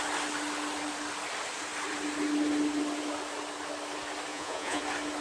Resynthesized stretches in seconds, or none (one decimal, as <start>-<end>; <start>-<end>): 4.3-4.8